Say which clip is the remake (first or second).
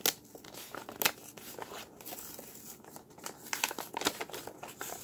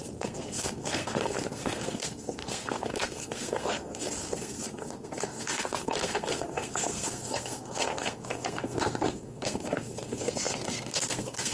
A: second